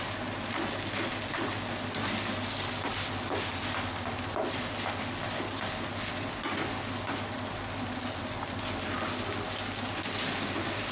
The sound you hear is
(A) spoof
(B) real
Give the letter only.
B